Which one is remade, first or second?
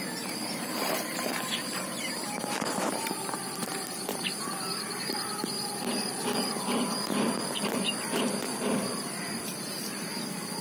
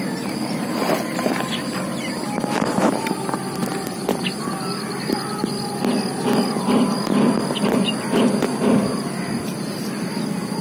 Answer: first